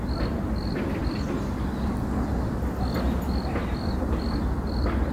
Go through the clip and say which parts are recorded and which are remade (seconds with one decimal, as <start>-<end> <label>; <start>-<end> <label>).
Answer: 0.0-5.1 recorded